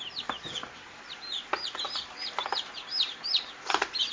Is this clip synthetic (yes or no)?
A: yes